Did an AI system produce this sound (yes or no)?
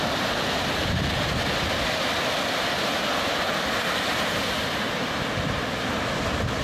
no